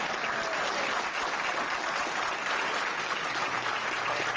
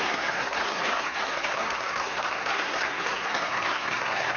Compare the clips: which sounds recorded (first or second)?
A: first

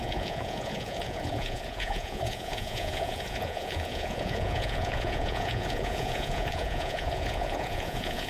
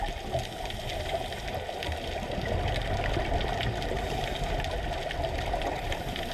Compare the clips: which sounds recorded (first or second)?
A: second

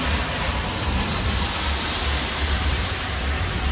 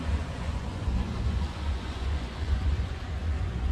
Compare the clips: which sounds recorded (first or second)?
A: first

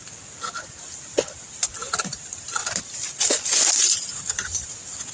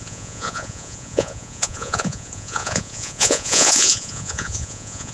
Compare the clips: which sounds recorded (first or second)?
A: first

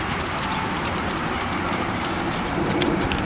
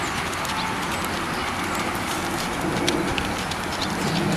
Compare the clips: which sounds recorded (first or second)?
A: second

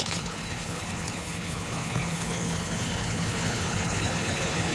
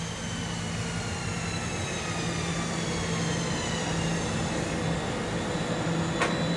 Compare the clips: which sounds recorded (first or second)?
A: second